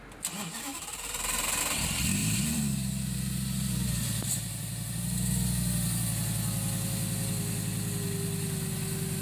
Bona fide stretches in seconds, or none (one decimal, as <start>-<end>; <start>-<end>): 0.0-0.7; 1.6-2.2; 5.4-9.2